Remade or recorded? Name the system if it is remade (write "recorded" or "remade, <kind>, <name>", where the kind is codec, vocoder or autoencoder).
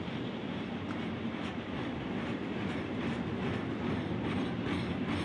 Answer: recorded